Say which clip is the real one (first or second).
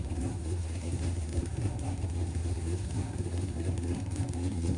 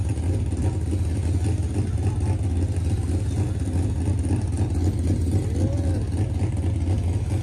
second